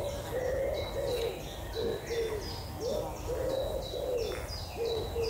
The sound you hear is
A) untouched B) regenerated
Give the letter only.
A